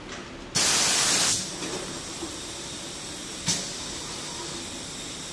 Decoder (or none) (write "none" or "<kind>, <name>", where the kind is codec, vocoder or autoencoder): none